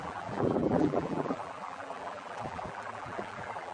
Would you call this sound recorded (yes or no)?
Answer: no